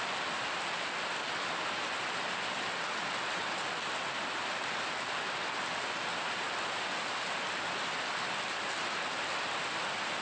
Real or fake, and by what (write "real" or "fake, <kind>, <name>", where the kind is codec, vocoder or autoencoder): real